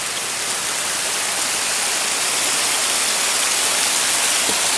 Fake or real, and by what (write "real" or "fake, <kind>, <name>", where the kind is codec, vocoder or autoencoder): real